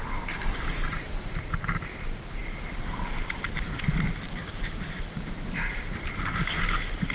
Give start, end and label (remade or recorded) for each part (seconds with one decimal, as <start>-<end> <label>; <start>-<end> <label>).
0.0-2.4 recorded; 2.4-5.7 remade; 5.7-7.1 recorded